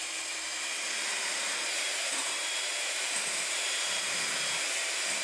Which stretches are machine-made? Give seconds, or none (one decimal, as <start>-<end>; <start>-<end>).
1.2-4.3